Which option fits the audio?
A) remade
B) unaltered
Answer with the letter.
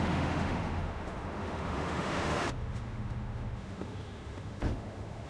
A